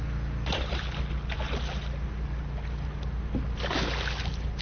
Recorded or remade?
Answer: recorded